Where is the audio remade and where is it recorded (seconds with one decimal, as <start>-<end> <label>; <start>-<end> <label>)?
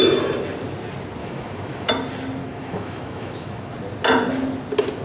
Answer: 0.0-1.2 recorded; 1.2-1.9 remade; 1.9-2.4 recorded; 2.4-3.7 remade; 3.7-5.0 recorded